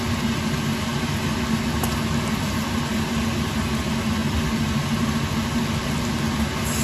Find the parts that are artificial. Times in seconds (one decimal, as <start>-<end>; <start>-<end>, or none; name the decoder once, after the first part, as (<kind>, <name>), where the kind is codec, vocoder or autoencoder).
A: none